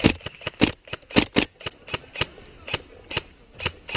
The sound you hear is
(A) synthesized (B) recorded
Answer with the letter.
B